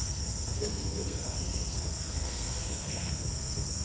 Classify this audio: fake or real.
fake